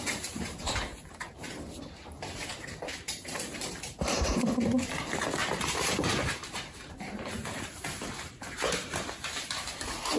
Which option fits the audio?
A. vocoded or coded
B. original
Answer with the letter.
A